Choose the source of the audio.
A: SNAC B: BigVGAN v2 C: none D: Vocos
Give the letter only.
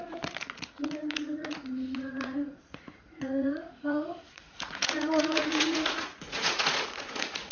D